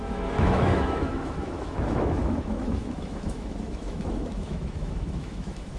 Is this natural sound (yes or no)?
no